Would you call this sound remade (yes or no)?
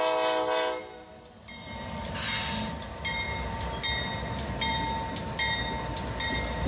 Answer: no